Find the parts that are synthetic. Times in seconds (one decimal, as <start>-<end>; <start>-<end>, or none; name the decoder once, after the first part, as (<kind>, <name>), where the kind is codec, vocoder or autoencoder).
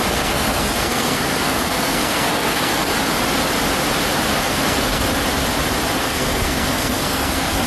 0.0-2.9 (codec, SNAC); 4.4-5.0; 6.0-7.7